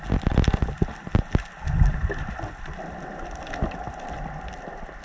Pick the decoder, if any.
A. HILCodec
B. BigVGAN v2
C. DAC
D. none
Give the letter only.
D